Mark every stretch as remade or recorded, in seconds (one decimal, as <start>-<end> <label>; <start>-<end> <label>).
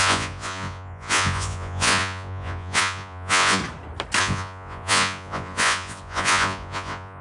0.0-3.6 remade; 3.6-4.2 recorded; 4.2-7.2 remade